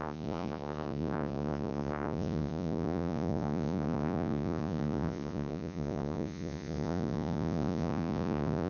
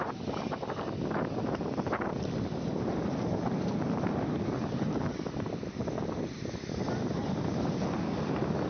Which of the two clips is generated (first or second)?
first